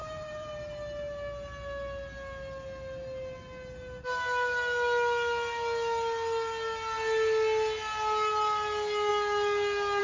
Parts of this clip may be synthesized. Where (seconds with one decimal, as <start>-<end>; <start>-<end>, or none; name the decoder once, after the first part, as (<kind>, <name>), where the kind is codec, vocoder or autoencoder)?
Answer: 0.0-0.5 (vocoder, BigVGAN v2)